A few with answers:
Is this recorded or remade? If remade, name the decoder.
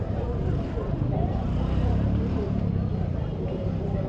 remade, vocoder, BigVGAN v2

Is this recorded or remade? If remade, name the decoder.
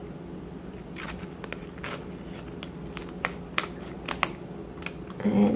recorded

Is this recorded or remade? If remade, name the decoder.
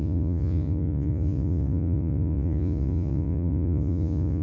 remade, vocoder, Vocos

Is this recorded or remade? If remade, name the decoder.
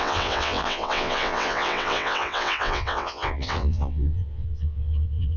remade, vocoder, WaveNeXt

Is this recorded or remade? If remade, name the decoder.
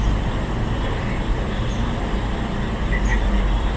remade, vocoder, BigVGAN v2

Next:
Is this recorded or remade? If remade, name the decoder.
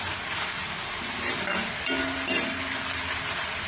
recorded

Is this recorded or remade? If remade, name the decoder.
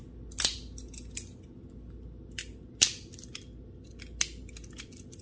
recorded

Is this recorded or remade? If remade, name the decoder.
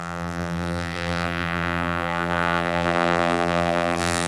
remade, vocoder, BigVGAN v2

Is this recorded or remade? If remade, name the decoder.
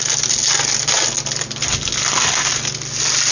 recorded